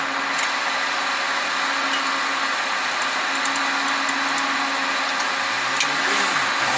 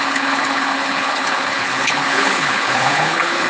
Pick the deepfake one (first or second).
second